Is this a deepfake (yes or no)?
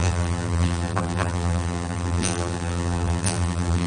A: yes